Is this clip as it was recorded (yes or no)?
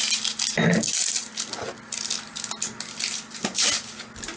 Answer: yes